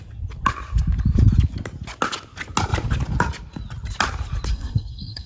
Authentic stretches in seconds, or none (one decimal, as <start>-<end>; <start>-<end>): 0.0-4.5